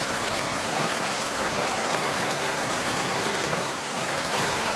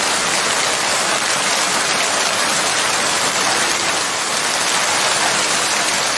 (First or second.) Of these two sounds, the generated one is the first